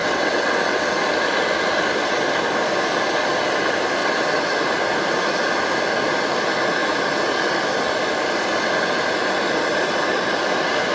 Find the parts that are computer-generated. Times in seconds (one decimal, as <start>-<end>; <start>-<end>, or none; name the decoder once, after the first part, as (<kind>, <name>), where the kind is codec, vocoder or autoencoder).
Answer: 0.0-0.9 (vocoder, WaveNeXt); 4.0-4.6